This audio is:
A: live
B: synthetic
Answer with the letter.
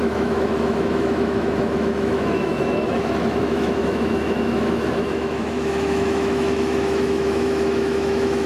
B